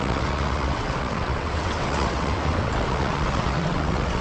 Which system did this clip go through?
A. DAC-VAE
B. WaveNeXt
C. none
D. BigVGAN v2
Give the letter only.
B